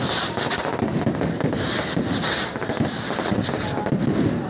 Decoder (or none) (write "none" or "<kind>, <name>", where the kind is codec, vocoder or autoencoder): none